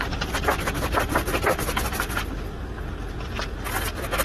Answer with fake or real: real